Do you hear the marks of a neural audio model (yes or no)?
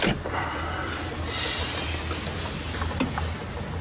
no